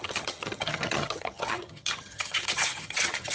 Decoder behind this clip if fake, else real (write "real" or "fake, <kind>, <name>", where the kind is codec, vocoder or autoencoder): fake, vocoder, HiFi-GAN